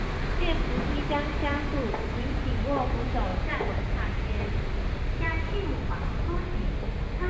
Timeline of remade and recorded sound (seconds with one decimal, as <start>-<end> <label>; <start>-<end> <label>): 0.0-1.4 recorded; 1.4-1.9 remade; 1.9-3.3 recorded; 3.3-4.4 remade; 4.4-7.3 recorded